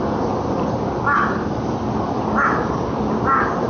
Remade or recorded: recorded